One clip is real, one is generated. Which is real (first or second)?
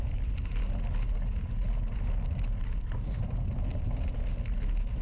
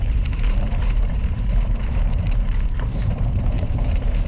first